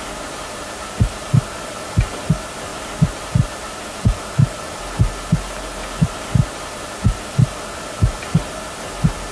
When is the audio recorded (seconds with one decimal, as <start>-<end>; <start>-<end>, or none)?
0.0-2.7; 4.8-9.3